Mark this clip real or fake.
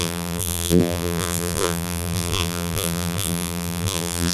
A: fake